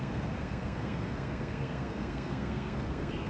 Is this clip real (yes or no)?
no